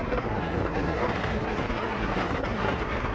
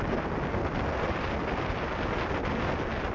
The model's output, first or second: first